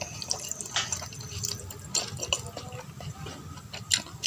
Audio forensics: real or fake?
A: real